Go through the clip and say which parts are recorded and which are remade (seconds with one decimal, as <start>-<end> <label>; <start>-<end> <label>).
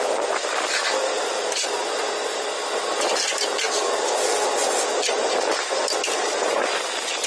0.0-7.3 recorded